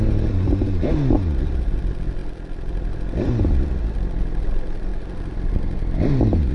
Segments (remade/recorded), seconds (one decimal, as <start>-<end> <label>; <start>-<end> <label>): 0.0-6.5 recorded